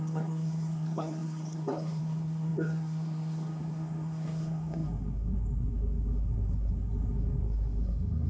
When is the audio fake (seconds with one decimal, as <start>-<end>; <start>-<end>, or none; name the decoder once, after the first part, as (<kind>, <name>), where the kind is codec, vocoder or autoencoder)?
0.0-8.3 (codec, SNAC)